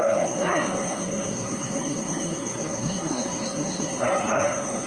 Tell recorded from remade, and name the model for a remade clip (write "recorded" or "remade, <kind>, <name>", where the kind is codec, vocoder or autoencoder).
remade, codec, SNAC